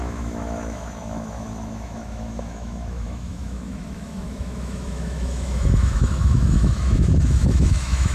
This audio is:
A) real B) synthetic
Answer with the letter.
B